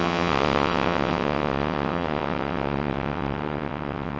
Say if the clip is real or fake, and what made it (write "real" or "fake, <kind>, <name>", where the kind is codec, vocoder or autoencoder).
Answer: fake, vocoder, WaveNeXt